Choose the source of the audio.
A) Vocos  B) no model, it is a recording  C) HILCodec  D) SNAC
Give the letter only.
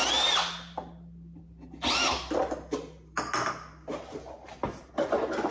B